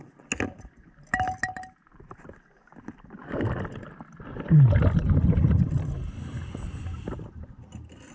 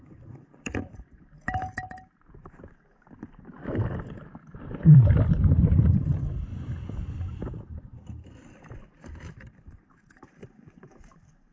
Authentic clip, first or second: first